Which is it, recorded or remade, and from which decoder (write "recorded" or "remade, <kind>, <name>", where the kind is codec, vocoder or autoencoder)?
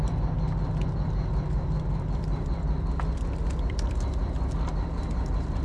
remade, vocoder, BigVGAN v2